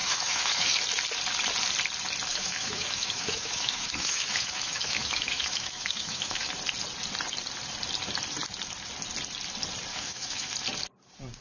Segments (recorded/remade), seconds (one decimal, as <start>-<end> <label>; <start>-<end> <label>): 0.0-0.8 remade; 0.8-2.3 recorded; 2.3-6.5 remade; 6.5-9.9 recorded; 9.9-10.5 remade; 10.5-11.4 recorded